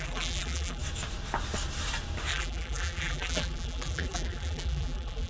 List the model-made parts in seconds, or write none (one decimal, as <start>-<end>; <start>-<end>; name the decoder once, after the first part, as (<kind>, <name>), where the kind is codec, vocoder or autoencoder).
0.0-0.8 (vocoder, BigVGAN v2); 2.3-5.3